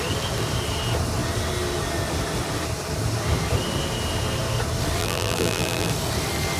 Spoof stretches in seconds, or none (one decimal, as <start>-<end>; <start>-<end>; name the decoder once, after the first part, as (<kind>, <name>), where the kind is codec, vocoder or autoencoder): 5.0-5.9 (vocoder, BigVGAN v2)